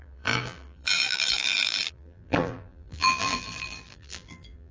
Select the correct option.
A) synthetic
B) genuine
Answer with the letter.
A